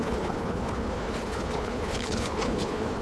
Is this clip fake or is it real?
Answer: fake